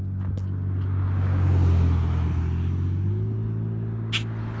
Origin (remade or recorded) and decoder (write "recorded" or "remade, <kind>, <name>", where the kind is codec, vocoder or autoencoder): recorded